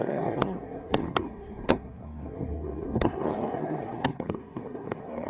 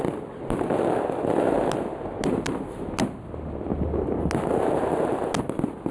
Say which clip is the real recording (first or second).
second